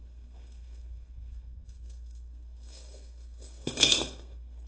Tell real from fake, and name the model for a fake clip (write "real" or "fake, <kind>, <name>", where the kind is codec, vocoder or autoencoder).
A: fake, codec, SNAC